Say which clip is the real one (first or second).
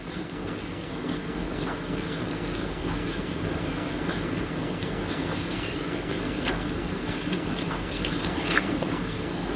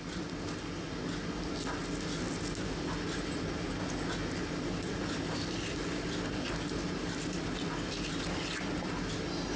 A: second